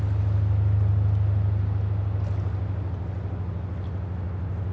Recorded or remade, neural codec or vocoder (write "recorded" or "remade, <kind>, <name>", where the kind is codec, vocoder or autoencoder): recorded